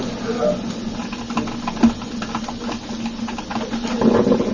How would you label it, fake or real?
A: real